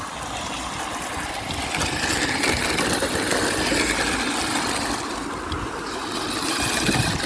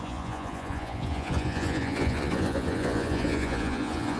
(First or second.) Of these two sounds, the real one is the first